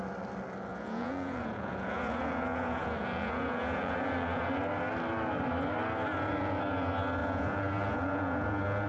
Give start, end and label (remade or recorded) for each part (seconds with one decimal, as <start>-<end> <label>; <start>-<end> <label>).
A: 0.0-0.7 recorded; 0.7-4.5 remade; 4.5-7.2 recorded; 7.2-8.9 remade